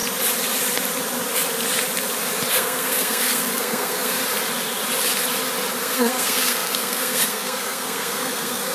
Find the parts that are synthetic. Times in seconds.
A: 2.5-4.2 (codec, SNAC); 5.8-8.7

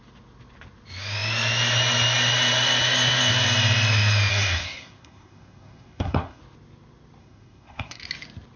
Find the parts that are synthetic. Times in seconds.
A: 4.3-6.4 (codec, SNAC); 7.2-8.0

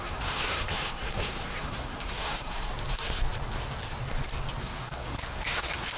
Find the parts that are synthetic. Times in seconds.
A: 0.0-2.7 (codec, SNAC); 4.6-6.0